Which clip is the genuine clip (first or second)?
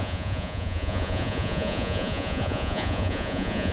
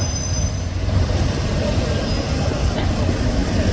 second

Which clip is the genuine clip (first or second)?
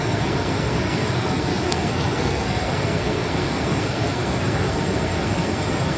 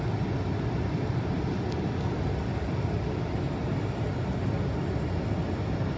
second